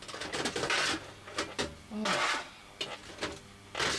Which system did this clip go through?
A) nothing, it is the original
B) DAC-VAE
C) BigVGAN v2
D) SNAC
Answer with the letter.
A